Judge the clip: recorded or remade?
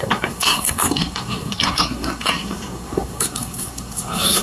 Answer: remade